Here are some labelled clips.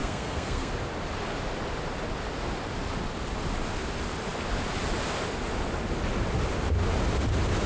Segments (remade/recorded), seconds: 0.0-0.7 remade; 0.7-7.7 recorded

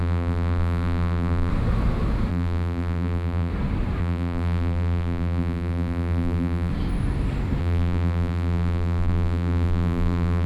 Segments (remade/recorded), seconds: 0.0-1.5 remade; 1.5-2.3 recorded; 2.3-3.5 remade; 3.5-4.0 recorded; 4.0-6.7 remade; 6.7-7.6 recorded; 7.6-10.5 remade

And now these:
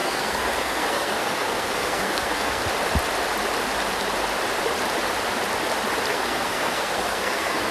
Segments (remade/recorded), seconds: 0.0-2.6 remade; 2.6-6.1 recorded; 6.1-7.7 remade

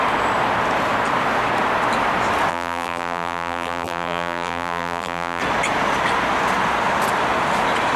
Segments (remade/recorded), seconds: 0.0-2.5 recorded; 2.5-5.4 remade; 5.4-8.0 recorded

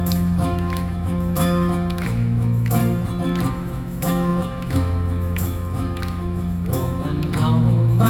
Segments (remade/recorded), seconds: 0.0-2.8 remade; 2.8-3.5 recorded; 3.5-8.1 remade

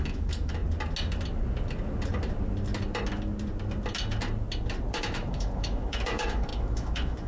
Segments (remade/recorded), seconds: 0.0-0.6 remade; 0.6-5.0 recorded; 5.0-7.3 remade

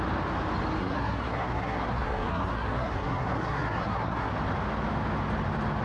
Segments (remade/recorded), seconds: 0.0-0.8 recorded; 0.8-4.3 remade; 4.3-5.8 recorded